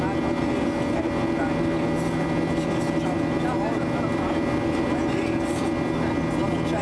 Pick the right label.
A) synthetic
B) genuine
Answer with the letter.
B